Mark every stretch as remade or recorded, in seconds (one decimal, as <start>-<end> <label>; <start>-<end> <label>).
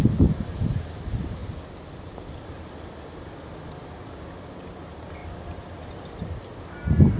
0.0-1.4 recorded; 1.4-2.2 remade; 2.2-5.2 recorded; 5.2-6.4 remade; 6.4-7.2 recorded